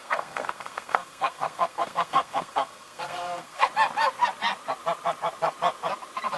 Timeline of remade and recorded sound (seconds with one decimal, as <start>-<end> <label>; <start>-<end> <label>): 0.0-3.7 remade; 3.7-6.4 recorded